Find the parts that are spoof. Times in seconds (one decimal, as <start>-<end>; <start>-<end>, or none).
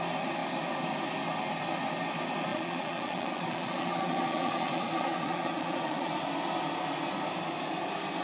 2.5-6.1